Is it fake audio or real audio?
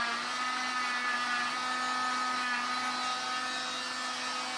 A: real